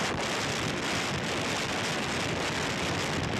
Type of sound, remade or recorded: recorded